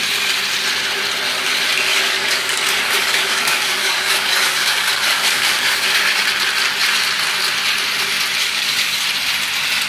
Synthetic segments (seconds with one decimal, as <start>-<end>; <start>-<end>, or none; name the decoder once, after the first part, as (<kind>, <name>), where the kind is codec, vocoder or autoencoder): 1.9-6.2 (codec, DAC); 8.4-9.0